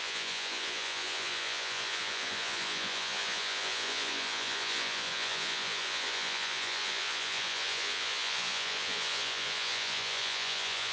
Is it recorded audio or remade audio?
remade